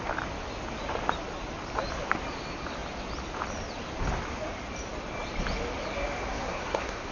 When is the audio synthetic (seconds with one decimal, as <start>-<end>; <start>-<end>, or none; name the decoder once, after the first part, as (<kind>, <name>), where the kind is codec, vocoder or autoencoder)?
6.3-7.1 (codec, SNAC)